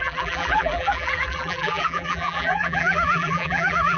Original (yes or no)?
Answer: no